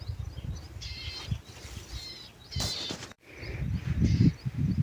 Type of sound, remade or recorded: remade